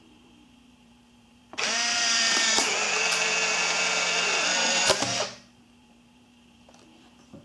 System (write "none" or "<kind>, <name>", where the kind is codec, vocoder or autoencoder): vocoder, BigVGAN v2